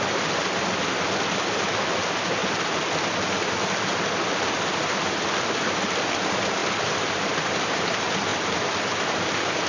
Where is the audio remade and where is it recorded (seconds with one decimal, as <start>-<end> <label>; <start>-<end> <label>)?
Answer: 0.0-9.7 recorded